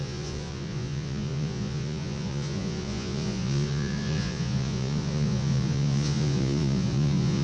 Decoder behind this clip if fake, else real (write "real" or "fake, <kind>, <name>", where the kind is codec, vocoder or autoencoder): fake, vocoder, Vocos